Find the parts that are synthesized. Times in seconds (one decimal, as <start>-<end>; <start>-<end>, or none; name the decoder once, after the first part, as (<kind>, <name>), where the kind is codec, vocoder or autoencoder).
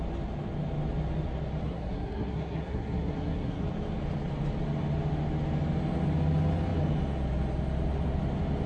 1.6-3.6 (codec, SNAC)